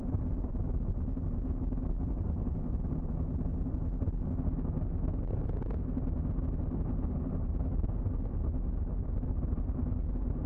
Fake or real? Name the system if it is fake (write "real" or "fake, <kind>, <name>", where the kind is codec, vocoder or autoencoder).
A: real